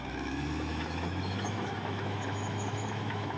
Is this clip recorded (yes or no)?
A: no